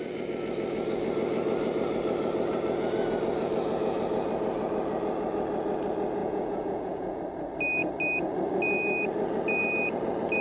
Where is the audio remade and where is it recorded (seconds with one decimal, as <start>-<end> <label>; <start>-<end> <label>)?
0.0-6.2 recorded; 6.2-7.2 remade; 7.2-10.4 recorded